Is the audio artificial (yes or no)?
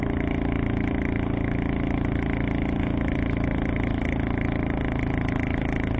no